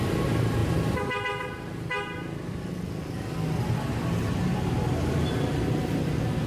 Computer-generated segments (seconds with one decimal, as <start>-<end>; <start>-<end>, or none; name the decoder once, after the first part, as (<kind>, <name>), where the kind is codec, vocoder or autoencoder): none